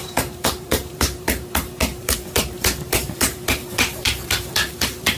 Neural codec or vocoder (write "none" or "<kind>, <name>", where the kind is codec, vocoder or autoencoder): vocoder, BigVGAN v2